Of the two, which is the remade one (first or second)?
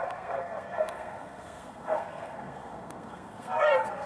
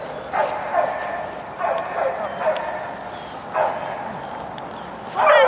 first